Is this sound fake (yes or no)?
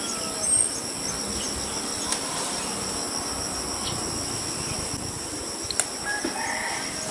no